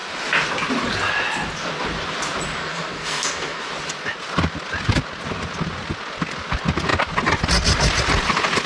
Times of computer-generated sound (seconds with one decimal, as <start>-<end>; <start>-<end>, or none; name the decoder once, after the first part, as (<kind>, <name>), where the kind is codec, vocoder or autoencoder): 2.6-3.6 (codec, SNAC)